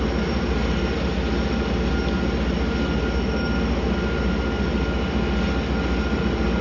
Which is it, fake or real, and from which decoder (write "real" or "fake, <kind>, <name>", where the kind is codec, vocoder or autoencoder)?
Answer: real